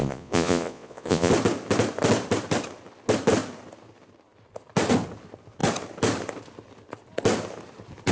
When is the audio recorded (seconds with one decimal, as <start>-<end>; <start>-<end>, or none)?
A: 1.3-8.1